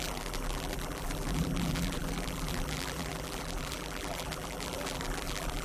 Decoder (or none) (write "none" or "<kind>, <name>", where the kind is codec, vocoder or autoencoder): vocoder, BigVGAN v2